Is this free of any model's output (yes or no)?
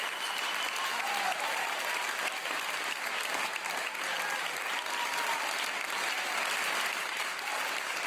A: yes